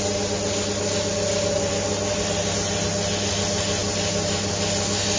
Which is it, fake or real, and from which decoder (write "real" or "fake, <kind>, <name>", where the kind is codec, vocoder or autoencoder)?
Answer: real